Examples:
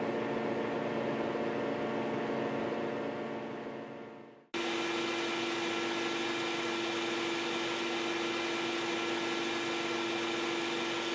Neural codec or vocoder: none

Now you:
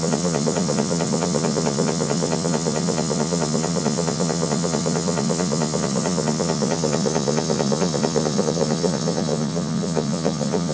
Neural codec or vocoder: vocoder, Vocos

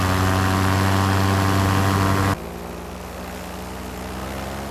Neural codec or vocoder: none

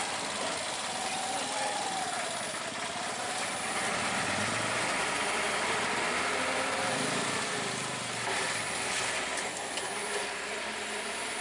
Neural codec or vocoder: vocoder, BigVGAN v2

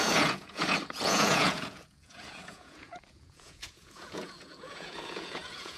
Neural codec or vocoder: vocoder, Vocos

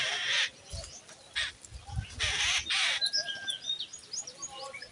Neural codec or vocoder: none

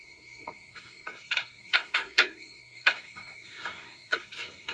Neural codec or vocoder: codec, SNAC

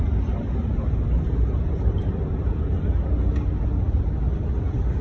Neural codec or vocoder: none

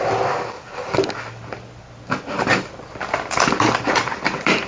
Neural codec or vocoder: none